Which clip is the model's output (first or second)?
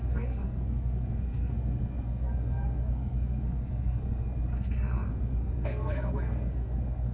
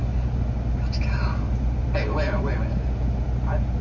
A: first